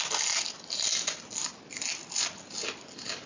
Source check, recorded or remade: recorded